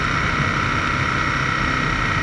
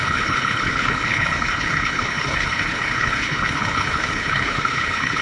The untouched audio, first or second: first